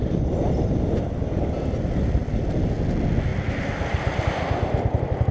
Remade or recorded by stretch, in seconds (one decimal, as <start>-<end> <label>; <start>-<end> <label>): 0.0-5.3 recorded